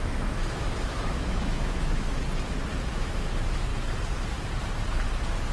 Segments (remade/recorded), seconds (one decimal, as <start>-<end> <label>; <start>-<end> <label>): 0.0-2.2 remade; 2.2-2.8 recorded; 2.8-3.7 remade; 3.7-5.5 recorded